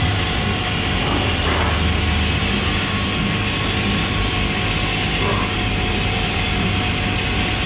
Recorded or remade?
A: recorded